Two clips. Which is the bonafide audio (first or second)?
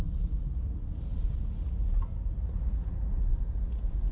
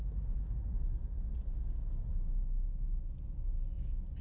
second